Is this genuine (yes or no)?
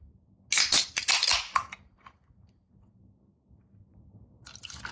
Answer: yes